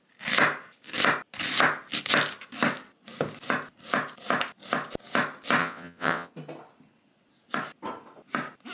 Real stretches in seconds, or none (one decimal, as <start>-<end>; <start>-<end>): 0.0-5.6; 6.3-8.7